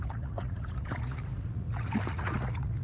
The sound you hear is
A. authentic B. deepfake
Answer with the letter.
B